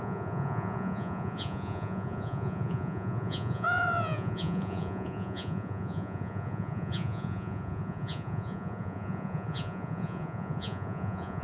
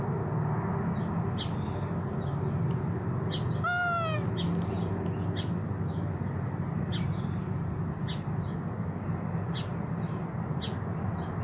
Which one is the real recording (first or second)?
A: second